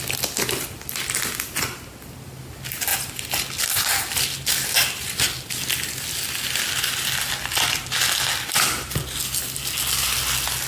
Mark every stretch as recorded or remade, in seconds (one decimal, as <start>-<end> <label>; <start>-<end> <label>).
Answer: 0.0-10.7 recorded